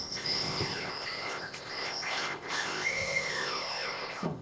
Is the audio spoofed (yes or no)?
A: yes